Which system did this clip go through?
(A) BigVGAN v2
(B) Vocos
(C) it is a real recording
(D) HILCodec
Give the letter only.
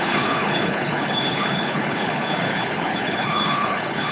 D